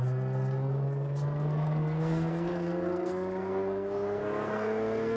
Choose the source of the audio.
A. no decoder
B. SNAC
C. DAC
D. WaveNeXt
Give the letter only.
B